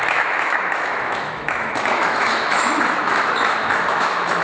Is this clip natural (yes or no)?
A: no